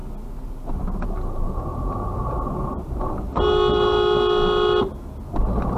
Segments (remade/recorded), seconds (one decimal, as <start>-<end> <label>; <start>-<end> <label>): 0.0-5.8 recorded